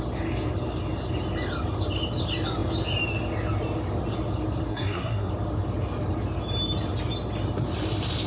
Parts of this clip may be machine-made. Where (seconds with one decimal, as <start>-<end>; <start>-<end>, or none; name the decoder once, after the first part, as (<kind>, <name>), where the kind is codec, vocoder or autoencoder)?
4.7-5.3 (codec, SNAC)

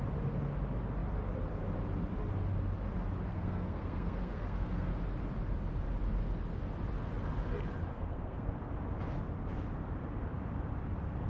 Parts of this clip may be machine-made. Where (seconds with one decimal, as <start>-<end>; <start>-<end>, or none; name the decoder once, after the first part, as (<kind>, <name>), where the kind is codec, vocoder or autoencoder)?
3.3-4.9 (codec, SNAC); 7.9-8.5

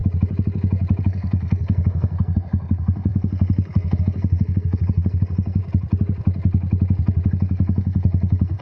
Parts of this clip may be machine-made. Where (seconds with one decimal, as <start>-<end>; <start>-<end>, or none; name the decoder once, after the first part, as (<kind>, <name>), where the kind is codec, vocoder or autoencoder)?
1.0-5.6 (codec, SNAC); 7.3-8.6

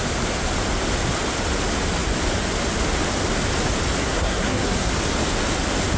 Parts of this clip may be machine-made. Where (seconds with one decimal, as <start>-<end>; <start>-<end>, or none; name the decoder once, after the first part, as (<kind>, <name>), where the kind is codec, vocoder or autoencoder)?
4.0-4.9 (codec, SNAC)

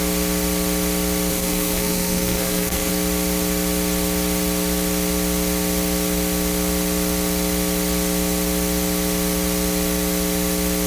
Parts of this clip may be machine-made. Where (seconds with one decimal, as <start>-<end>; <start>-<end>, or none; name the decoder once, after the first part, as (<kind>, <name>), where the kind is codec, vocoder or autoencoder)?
1.3-2.9 (codec, SNAC)

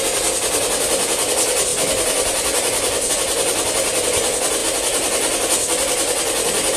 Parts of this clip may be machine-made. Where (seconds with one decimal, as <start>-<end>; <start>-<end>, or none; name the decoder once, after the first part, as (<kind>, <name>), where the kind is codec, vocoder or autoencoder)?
none